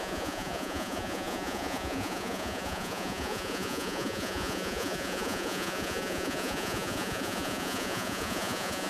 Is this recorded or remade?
remade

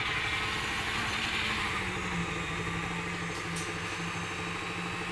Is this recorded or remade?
recorded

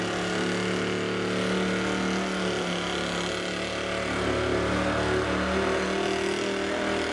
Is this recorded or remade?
recorded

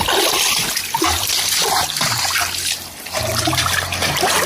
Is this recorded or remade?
recorded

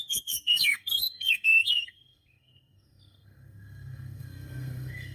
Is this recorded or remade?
remade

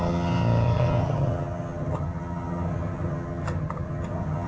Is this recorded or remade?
remade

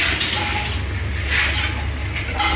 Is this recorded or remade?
recorded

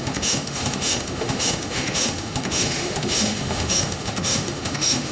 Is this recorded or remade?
remade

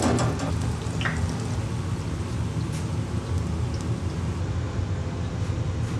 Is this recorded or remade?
recorded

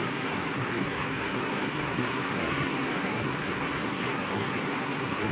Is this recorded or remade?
remade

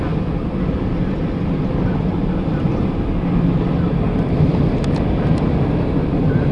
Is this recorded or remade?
recorded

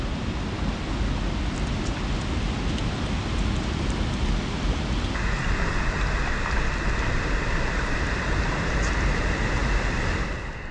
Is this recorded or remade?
recorded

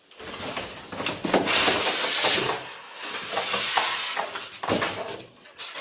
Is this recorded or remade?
recorded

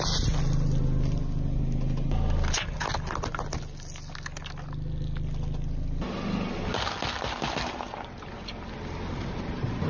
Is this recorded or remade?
recorded